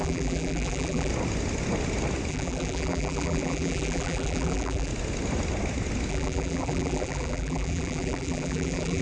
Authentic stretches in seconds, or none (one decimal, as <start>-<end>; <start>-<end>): 1.1-2.3; 4.9-6.1

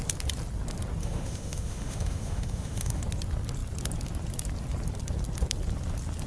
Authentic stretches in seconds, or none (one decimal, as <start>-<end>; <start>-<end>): 0.0-1.0; 3.0-6.3

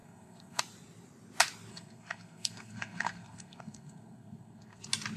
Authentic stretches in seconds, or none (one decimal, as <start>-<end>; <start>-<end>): 0.6-1.7; 4.8-5.2

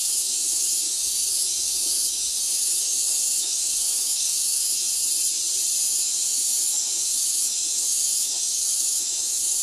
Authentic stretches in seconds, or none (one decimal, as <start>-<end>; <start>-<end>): 5.0-5.8